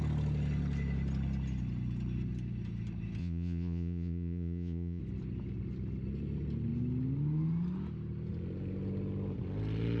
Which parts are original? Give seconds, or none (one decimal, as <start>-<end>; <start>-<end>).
0.0-3.2; 5.0-10.0